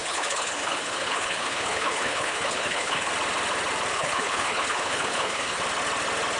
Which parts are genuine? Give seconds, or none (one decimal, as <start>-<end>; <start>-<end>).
3.1-3.9; 5.6-6.4